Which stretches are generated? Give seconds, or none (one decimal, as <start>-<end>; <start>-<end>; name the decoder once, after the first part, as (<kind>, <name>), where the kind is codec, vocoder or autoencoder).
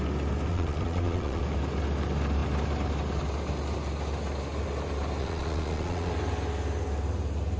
0.5-1.4 (vocoder, Vocos); 5.2-6.1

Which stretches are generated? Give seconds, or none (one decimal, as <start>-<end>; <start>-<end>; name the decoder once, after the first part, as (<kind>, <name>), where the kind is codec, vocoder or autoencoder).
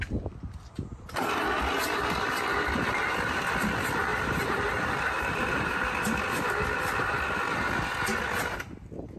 4.1-5.8 (vocoder, BigVGAN v2)